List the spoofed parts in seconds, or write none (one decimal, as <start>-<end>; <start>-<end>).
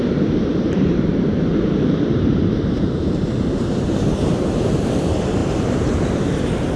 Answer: 0.0-6.8